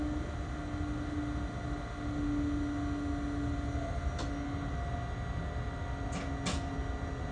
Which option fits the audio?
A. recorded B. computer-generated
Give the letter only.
A